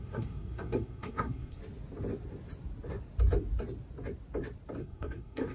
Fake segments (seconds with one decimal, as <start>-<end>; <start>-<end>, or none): 0.0-1.6; 4.8-5.5